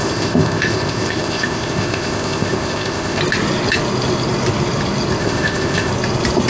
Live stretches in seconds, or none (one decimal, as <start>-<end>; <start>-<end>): 3.2-5.2; 5.9-6.5